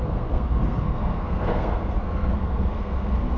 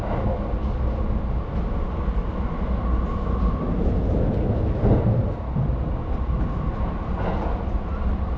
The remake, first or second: first